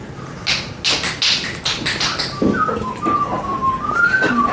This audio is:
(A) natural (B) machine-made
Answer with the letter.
A